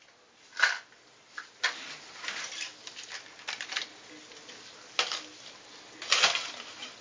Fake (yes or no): no